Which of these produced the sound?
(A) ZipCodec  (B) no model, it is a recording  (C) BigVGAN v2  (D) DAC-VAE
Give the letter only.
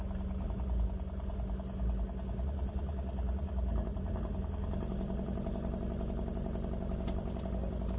B